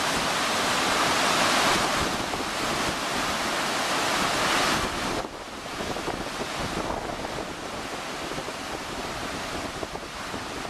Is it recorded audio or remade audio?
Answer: recorded